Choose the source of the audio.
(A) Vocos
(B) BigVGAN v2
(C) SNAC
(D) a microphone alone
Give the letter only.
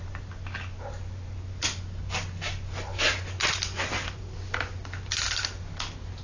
D